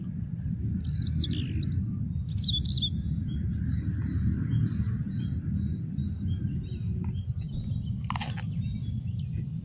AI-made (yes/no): no